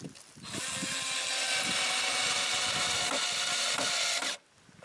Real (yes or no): yes